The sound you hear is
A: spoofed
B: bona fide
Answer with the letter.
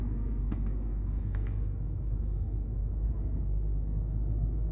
A